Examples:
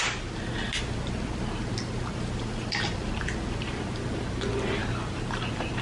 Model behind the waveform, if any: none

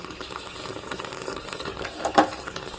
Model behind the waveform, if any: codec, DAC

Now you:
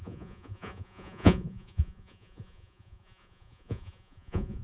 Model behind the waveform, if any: vocoder, Vocos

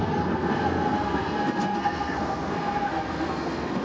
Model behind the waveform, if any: codec, SNAC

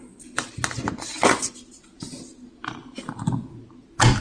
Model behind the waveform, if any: none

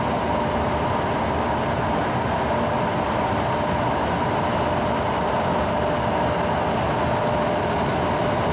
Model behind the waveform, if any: none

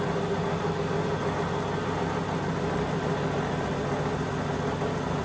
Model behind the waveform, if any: none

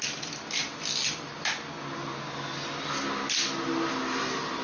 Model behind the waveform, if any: none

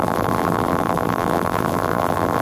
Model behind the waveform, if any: vocoder, BigVGAN v2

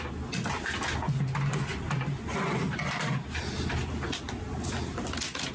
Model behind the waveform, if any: none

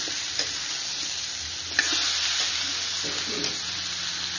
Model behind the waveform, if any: none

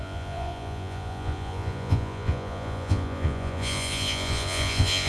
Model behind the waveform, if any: vocoder, Vocos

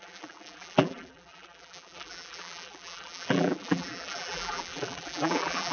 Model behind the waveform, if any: vocoder, BigVGAN v2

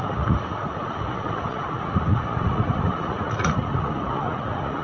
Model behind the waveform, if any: vocoder, Vocos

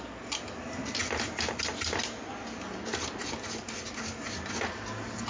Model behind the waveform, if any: none